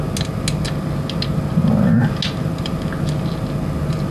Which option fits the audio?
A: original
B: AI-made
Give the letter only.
A